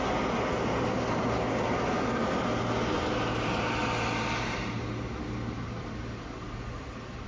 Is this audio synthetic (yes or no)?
no